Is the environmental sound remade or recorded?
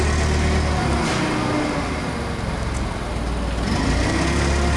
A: recorded